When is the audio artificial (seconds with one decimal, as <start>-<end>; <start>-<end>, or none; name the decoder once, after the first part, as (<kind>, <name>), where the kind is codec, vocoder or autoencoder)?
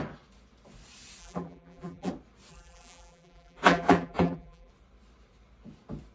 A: 1.2-2.1 (vocoder, BigVGAN v2); 2.5-4.7